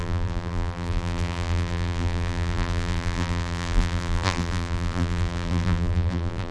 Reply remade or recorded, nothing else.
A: remade